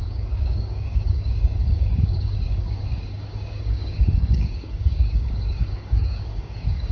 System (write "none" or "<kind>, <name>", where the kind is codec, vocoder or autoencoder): codec, DAC